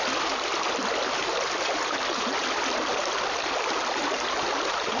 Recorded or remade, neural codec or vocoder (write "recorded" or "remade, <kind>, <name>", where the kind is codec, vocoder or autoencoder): recorded